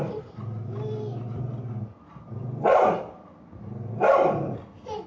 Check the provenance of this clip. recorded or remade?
recorded